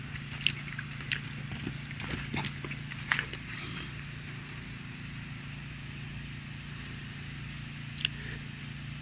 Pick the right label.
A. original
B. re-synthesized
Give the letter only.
A